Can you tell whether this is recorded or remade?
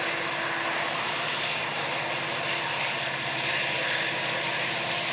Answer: recorded